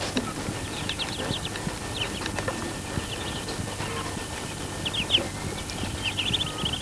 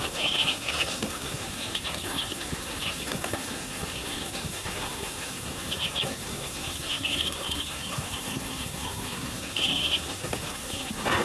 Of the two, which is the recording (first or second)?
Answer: first